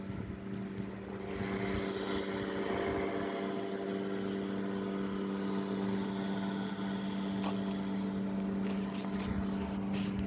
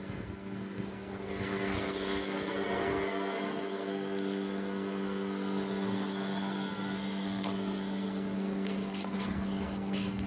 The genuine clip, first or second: first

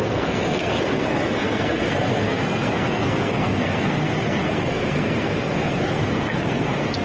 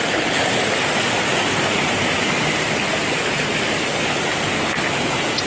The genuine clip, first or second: second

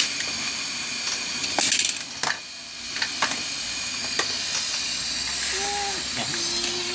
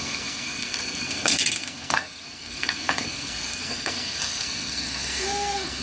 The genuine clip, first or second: first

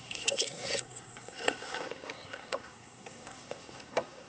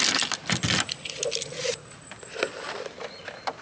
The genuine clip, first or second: second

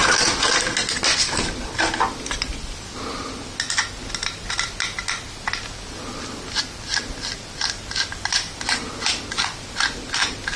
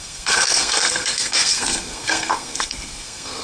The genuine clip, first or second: first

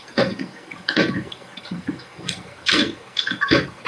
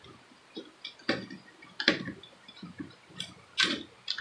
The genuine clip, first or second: second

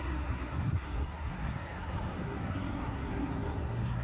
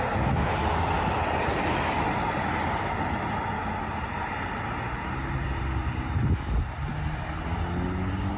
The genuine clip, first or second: second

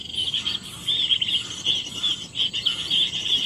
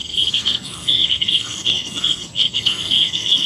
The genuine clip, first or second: first